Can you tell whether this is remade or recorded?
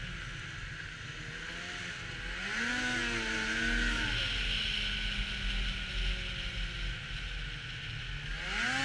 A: recorded